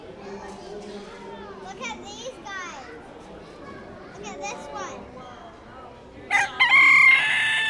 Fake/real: real